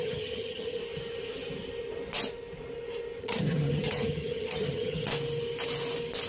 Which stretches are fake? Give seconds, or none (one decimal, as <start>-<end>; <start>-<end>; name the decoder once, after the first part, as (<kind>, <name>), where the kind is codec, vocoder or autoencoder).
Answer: 0.0-0.8 (vocoder, HiFi-GAN); 3.2-5.1